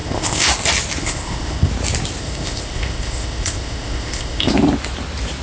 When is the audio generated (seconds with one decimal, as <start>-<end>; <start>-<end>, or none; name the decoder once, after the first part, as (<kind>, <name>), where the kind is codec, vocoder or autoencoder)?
0.0-0.5 (codec, ZipCodec); 1.0-1.7; 2.2-4.5